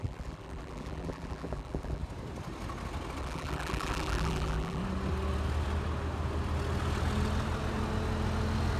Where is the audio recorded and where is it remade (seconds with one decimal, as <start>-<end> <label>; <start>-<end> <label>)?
0.0-2.0 remade; 2.0-3.2 recorded; 3.2-4.8 remade; 4.8-8.8 recorded